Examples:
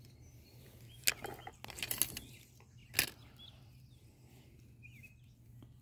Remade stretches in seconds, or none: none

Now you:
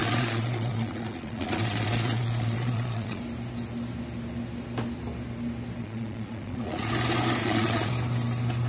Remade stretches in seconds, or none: 0.0-3.2; 5.8-6.9; 7.4-7.9

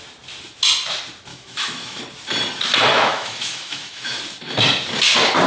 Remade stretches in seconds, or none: 1.3-2.0; 2.9-4.2

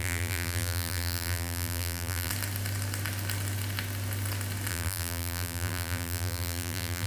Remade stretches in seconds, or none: 0.0-2.3; 4.7-7.1